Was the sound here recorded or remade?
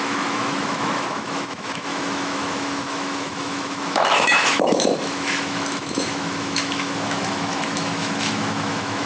remade